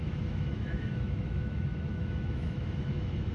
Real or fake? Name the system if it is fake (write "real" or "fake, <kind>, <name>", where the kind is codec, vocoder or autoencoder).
fake, autoencoder, DAC-VAE